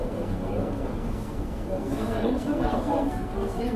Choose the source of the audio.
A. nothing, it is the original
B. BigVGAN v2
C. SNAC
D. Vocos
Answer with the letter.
C